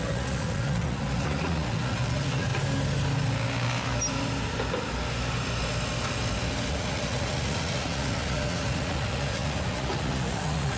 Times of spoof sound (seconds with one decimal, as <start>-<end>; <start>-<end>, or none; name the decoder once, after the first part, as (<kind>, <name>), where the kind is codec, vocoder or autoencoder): 0.0-2.5 (vocoder, Vocos); 6.7-10.8